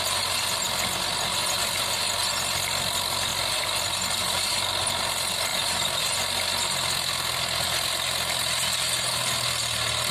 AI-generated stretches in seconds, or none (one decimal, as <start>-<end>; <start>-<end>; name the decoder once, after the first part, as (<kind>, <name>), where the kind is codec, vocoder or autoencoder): none